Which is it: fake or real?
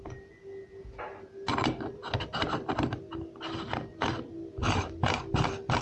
real